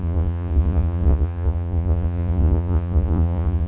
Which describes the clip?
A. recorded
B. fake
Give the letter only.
B